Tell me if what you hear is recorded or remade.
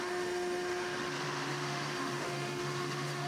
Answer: remade